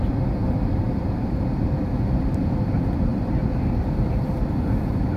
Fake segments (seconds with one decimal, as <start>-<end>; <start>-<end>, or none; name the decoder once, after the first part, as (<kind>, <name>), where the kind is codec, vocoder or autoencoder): 0.0-5.2 (vocoder, BigVGAN v2)